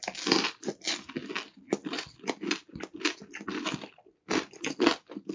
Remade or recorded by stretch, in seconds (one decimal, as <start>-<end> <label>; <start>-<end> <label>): 0.0-5.3 recorded